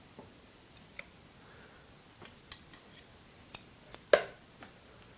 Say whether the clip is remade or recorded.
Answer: recorded